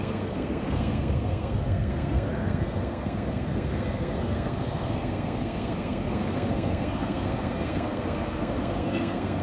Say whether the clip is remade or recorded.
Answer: remade